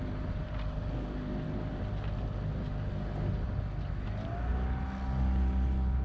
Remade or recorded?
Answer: recorded